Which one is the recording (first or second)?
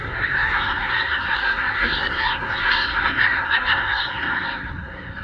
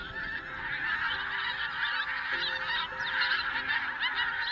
second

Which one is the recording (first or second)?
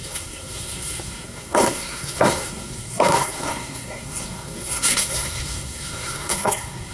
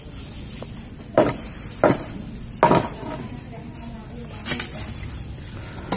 second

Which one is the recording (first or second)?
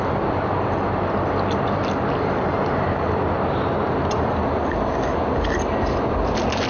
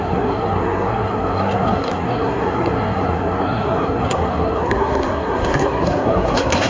first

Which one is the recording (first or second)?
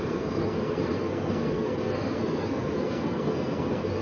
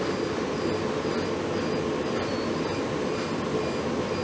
second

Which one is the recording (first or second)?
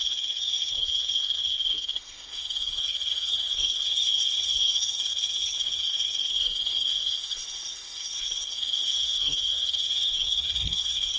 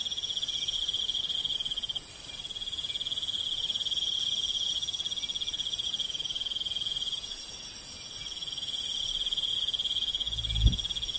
second